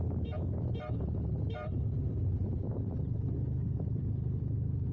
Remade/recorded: remade